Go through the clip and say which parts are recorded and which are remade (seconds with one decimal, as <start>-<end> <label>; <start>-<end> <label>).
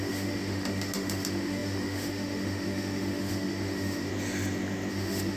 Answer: 0.0-4.1 remade; 4.1-4.9 recorded; 4.9-5.4 remade